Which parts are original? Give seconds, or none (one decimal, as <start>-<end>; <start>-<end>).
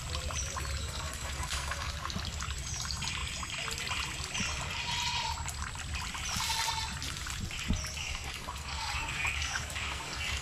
0.0-0.8; 1.9-8.0